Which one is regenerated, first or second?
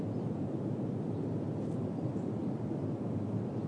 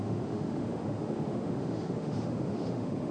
second